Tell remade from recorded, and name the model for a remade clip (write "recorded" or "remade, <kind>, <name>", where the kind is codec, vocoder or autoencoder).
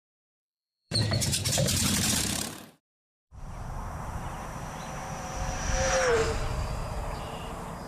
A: remade, vocoder, BigVGAN v2